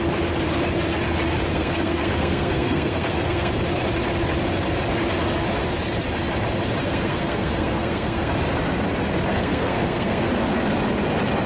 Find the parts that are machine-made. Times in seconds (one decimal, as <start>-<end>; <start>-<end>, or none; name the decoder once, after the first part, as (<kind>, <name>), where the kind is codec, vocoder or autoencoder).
1.5-3.5 (codec, SNAC); 6.8-8.3; 9.3-10.3